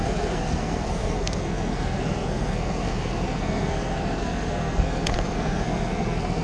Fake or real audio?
fake